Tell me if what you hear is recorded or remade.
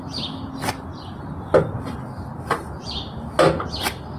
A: recorded